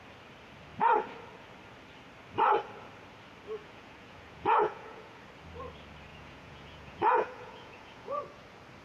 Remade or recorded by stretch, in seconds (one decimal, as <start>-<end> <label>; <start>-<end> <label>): 0.0-3.6 recorded; 3.6-5.2 remade; 5.2-6.1 recorded; 6.1-8.2 remade; 8.2-8.8 recorded